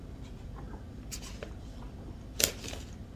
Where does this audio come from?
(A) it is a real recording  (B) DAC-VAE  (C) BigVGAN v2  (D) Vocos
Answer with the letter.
C